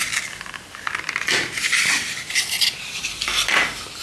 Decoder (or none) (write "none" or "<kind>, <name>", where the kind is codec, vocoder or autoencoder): vocoder, BigVGAN v2